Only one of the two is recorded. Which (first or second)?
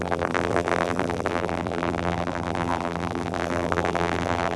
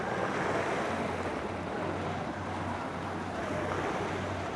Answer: second